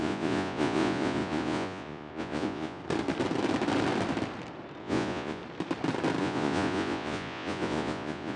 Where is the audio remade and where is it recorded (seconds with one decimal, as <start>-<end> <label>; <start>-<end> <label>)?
0.0-2.8 remade; 2.8-4.8 recorded; 4.8-5.4 remade; 5.4-6.2 recorded; 6.2-8.4 remade